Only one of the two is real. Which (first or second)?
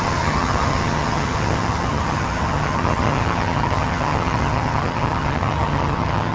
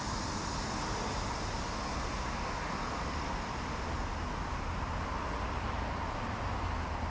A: second